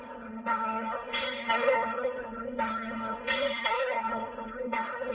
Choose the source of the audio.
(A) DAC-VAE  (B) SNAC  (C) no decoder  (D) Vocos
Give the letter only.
B